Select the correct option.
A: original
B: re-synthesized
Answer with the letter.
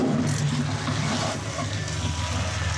A